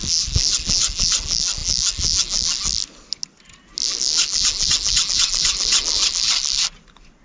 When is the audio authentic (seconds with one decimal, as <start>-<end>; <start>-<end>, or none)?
0.0-7.2